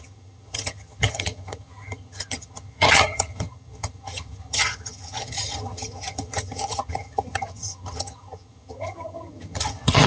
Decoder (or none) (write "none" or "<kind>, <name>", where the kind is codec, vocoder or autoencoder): vocoder, HiFi-GAN